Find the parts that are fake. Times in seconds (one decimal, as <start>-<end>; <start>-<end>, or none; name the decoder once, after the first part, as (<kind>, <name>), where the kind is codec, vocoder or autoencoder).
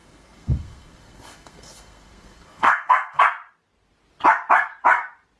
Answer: 0.0-3.2 (codec, SNAC)